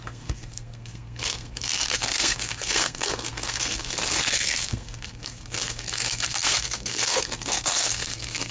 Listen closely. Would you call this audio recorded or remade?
remade